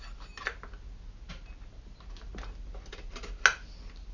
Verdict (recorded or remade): recorded